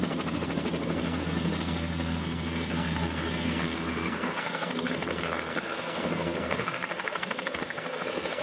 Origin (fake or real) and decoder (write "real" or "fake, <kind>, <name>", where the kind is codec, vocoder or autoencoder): fake, codec, SNAC